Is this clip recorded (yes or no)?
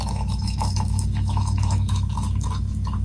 no